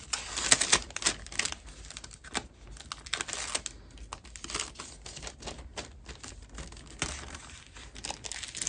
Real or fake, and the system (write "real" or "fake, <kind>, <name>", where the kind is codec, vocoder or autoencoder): real